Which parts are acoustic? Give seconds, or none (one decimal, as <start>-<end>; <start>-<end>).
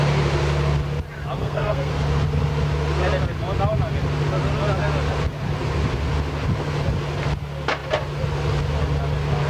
0.0-1.4; 1.9-9.5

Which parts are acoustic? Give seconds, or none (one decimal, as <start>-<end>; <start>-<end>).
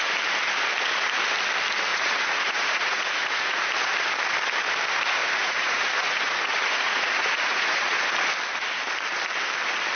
0.0-1.9; 3.6-5.2; 8.0-10.0